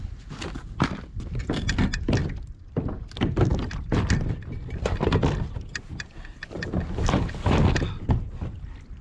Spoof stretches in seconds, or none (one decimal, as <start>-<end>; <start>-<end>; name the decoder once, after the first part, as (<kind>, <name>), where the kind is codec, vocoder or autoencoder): none